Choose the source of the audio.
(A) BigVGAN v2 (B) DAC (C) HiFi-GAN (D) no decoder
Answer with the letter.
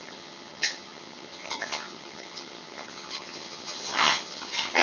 C